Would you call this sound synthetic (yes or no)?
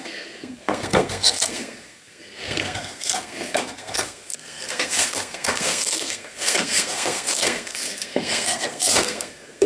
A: yes